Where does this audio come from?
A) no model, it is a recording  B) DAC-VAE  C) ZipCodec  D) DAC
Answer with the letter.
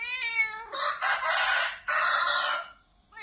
A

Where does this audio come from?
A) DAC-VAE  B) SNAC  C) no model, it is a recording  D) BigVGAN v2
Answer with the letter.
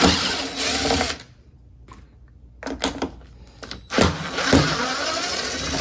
C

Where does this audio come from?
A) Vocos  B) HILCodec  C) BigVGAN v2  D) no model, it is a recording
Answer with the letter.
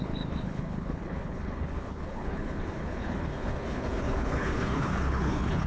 B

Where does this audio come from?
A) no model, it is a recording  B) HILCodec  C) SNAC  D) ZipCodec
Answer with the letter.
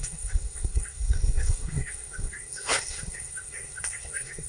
C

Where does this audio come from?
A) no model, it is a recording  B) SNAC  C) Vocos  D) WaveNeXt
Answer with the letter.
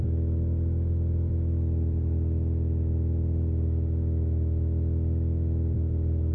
A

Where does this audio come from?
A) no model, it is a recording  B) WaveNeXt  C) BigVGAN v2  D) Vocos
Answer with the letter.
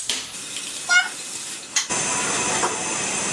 A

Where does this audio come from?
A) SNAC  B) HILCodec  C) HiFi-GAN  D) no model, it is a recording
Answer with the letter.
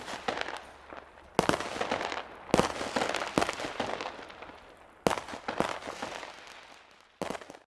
D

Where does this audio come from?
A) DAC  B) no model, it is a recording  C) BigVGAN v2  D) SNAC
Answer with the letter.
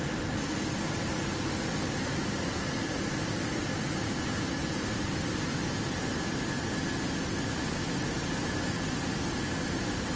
B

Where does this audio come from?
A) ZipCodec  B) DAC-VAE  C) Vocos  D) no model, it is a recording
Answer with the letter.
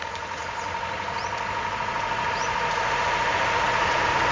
C